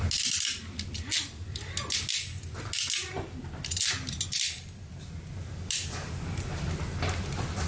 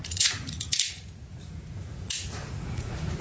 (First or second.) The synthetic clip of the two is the second